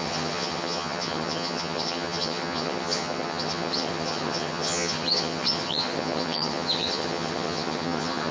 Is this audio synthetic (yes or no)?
yes